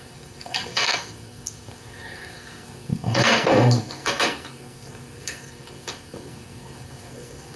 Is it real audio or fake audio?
fake